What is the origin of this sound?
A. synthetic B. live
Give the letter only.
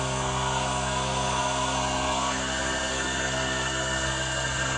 A